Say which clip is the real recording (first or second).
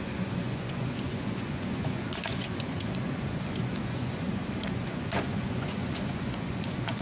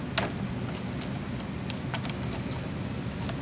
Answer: second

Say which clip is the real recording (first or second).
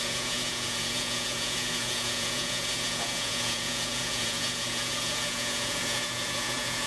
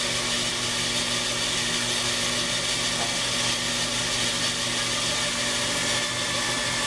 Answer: second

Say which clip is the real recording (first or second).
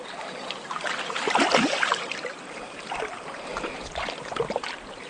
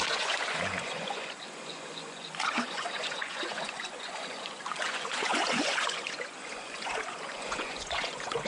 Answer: first